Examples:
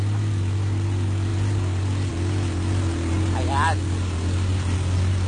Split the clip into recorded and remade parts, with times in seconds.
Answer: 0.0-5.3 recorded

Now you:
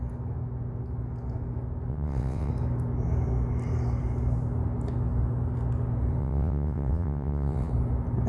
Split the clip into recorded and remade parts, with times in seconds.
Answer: 0.0-1.9 recorded; 1.9-2.5 remade; 2.5-6.2 recorded; 6.2-7.7 remade; 7.7-8.3 recorded

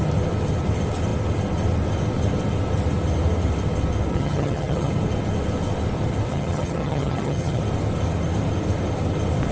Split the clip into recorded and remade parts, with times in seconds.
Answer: 0.0-4.1 recorded; 4.1-4.9 remade; 4.9-6.3 recorded; 6.3-7.6 remade; 7.6-9.5 recorded

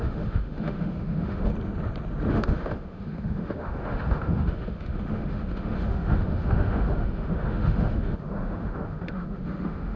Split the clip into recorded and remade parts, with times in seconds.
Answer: 0.0-1.5 remade; 1.5-2.3 recorded; 2.3-10.0 remade

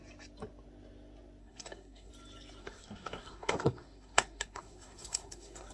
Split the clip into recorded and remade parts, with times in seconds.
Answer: 0.0-1.4 recorded; 1.4-2.1 remade; 2.1-2.6 recorded; 2.6-5.7 remade

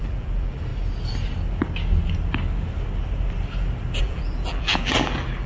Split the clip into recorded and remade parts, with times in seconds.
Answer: 0.0-0.7 remade; 0.7-4.0 recorded; 4.0-5.5 remade